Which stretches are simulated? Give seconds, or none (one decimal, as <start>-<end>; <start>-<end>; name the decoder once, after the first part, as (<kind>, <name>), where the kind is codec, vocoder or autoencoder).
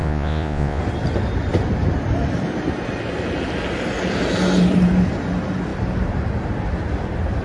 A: 0.0-0.8 (vocoder, Vocos)